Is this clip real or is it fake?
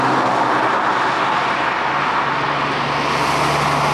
real